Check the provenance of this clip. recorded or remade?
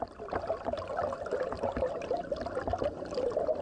recorded